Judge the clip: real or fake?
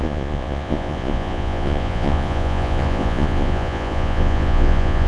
fake